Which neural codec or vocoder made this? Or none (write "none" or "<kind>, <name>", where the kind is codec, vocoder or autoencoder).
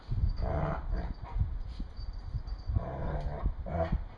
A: none